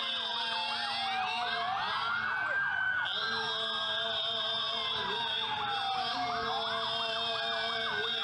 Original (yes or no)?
yes